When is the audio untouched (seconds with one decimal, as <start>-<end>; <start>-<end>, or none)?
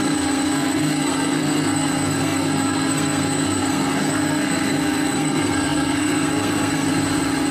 6.9-7.5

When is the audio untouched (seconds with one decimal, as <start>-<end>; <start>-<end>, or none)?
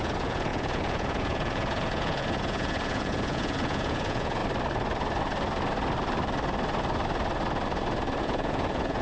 4.4-8.2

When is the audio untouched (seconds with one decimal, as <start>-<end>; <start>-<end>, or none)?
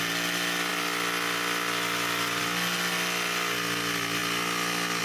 0.0-5.0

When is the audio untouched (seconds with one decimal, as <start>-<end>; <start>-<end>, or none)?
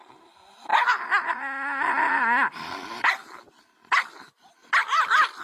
0.0-4.6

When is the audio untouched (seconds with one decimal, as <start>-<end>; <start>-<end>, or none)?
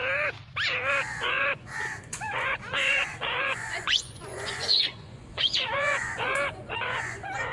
0.0-0.9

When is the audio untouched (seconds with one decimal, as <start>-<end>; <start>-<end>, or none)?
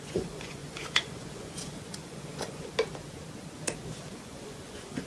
2.7-4.0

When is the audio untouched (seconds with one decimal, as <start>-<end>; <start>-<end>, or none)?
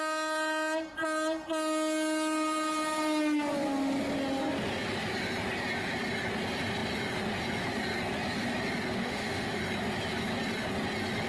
0.0-9.0; 9.6-11.3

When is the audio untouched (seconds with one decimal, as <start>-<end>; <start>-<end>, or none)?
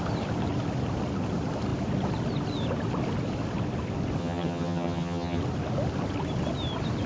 0.0-4.2; 5.4-7.1